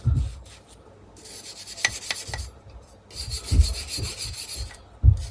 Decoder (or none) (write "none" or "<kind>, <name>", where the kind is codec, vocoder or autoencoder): none